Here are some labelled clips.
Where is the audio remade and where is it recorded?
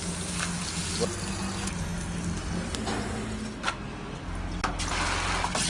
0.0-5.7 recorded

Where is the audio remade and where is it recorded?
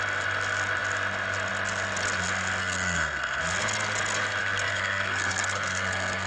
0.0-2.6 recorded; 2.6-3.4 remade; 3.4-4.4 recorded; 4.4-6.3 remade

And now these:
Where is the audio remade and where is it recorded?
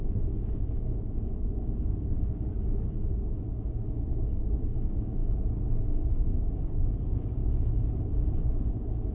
0.0-5.2 remade; 5.2-5.8 recorded; 5.8-7.4 remade; 7.4-8.1 recorded; 8.1-9.1 remade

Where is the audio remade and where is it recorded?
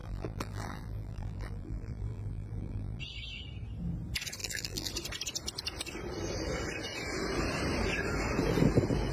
0.0-3.0 remade; 3.0-4.4 recorded; 4.4-4.9 remade; 4.9-9.1 recorded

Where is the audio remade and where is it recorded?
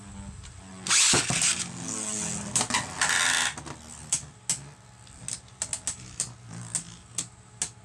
0.0-7.8 recorded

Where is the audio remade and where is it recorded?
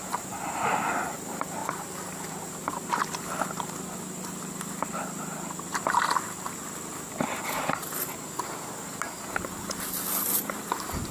0.0-11.1 recorded